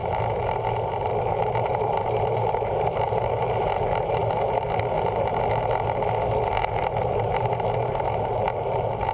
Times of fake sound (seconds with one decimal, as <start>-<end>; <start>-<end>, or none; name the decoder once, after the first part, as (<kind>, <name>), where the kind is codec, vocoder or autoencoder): 1.2-4.2 (vocoder, BigVGAN v2); 6.8-9.1